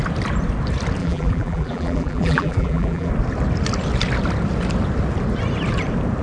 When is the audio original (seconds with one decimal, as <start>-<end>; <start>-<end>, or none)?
0.0-1.0; 3.1-6.2